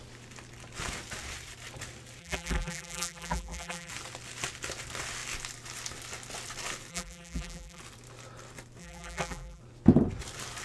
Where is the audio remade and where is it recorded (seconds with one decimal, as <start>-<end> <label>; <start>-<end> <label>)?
0.0-2.2 recorded; 2.2-3.9 remade; 3.9-6.9 recorded; 6.9-7.8 remade; 7.8-8.8 recorded; 8.8-9.6 remade; 9.6-10.6 recorded